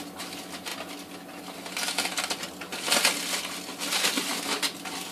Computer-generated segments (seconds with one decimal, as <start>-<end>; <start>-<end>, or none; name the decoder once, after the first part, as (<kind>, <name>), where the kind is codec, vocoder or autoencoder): none